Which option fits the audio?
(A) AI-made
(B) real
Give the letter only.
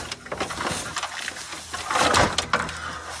B